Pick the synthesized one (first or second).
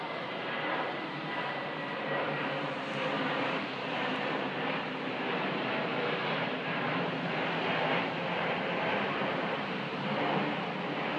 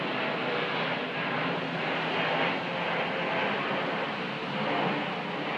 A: first